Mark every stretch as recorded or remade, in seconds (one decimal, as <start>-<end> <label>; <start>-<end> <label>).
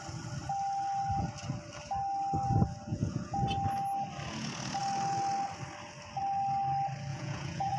0.0-2.9 recorded; 2.9-3.4 remade; 3.4-7.1 recorded; 7.1-7.8 remade